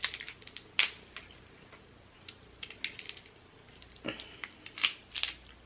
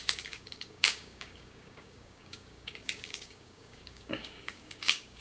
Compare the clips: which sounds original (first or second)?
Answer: first